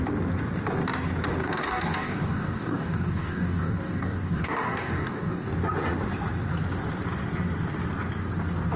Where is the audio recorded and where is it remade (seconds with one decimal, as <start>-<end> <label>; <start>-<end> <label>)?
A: 0.0-1.4 recorded; 1.4-5.5 remade; 5.5-8.8 recorded

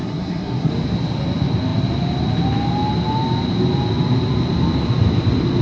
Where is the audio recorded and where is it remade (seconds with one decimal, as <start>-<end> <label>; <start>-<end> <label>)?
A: 0.0-0.7 remade; 0.7-5.6 recorded

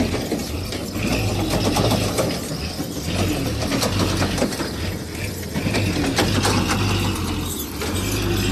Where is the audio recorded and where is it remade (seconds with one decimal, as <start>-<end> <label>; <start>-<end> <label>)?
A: 0.0-8.5 recorded